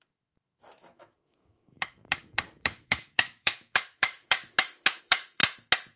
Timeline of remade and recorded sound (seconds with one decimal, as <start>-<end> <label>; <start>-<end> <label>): 0.0-5.4 remade; 5.4-6.0 recorded